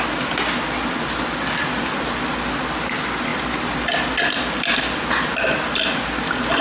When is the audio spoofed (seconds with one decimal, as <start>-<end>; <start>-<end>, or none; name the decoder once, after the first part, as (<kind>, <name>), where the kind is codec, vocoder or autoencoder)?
none